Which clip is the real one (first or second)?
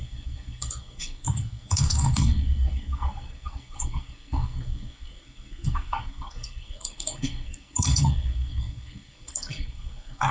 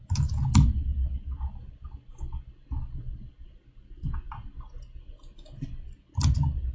second